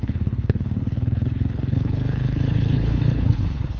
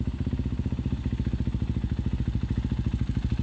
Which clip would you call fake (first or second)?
first